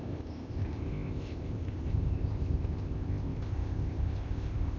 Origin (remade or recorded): remade